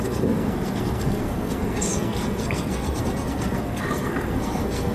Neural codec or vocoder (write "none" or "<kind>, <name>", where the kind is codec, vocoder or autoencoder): codec, SNAC